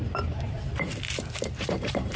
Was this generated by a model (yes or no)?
yes